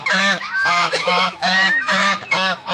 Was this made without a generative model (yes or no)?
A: no